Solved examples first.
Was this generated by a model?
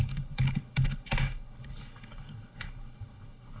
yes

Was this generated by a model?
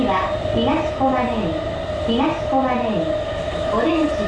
no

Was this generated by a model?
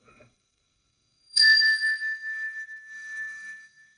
yes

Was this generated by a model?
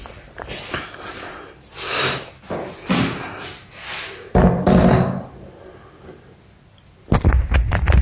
no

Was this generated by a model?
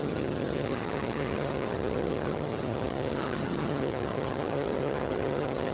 yes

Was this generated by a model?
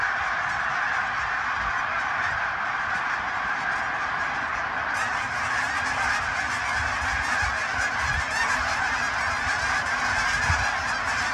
no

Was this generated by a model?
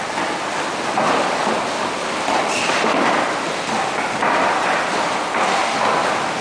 no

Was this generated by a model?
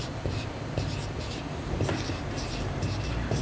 yes